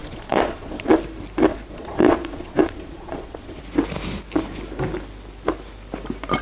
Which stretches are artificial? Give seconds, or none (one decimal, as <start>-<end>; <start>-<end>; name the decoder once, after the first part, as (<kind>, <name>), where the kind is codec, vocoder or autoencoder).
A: 0.0-1.0 (vocoder, Vocos); 1.5-3.6